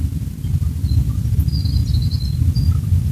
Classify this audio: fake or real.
real